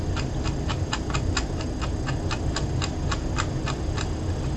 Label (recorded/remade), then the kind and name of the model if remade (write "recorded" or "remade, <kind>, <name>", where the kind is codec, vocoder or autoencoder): recorded